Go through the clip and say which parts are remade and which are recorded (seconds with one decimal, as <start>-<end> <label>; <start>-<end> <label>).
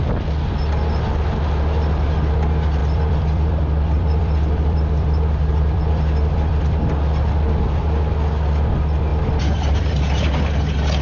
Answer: 0.0-2.8 recorded; 2.8-6.8 remade; 6.8-9.1 recorded; 9.1-10.2 remade; 10.2-11.0 recorded